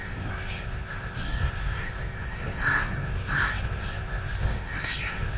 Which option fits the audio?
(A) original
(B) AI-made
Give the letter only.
B